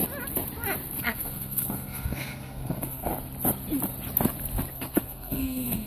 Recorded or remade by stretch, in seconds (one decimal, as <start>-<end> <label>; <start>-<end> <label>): 0.0-1.0 recorded; 1.0-3.1 remade; 3.1-4.7 recorded; 4.7-5.9 remade

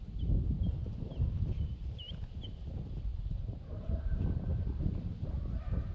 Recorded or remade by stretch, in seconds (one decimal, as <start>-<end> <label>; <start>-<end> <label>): 0.0-0.8 recorded; 0.8-2.7 remade; 2.7-3.1 recorded; 3.1-4.0 remade; 4.0-4.5 recorded; 4.5-5.2 remade; 5.2-5.9 recorded

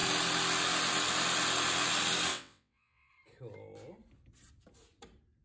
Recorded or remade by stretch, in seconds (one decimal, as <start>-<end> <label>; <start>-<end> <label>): 0.0-2.3 recorded; 2.3-3.1 remade; 3.1-5.4 recorded

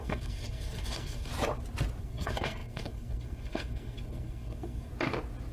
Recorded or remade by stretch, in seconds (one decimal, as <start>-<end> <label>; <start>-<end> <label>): 0.0-1.3 remade; 1.3-2.0 recorded; 2.0-4.9 remade; 4.9-5.5 recorded

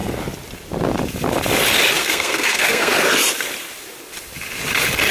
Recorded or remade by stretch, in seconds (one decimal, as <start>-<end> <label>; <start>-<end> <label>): 0.0-2.0 recorded; 2.0-2.9 remade; 2.9-5.1 recorded

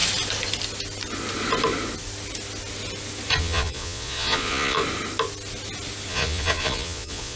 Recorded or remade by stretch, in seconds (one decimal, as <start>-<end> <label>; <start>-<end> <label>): 0.0-3.4 recorded; 3.4-4.8 remade; 4.8-6.1 recorded; 6.1-7.4 remade

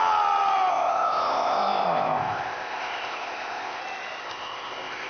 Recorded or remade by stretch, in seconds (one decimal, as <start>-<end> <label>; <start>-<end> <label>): 0.0-0.7 recorded; 0.7-3.8 remade; 3.8-4.2 recorded; 4.2-5.1 remade